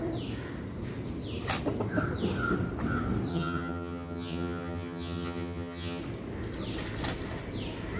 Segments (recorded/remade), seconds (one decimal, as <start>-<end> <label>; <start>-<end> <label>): 0.0-3.3 recorded; 3.3-6.0 remade; 6.0-8.0 recorded